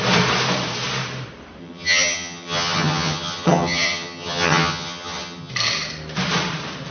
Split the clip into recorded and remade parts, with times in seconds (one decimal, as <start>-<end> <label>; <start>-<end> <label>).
0.0-1.6 recorded; 1.6-5.5 remade; 5.5-6.9 recorded